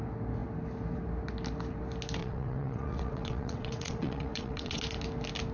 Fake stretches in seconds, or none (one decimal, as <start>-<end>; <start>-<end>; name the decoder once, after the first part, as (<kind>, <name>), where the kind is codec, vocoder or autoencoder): 2.2-4.8 (vocoder, WaveNeXt)